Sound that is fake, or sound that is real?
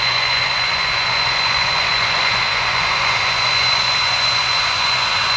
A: fake